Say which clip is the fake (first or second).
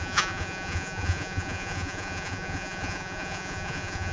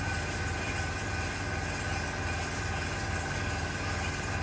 first